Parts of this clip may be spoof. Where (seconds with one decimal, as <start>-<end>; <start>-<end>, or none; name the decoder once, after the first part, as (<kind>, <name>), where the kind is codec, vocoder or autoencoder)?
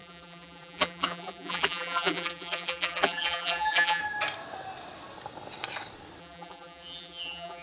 0.0-4.0 (vocoder, BigVGAN v2); 6.2-7.6